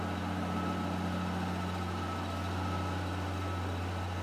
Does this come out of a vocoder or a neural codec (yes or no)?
no